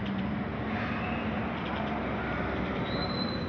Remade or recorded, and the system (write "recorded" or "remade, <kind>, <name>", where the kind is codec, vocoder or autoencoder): recorded